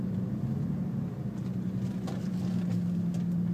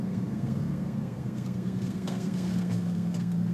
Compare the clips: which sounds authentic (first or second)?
first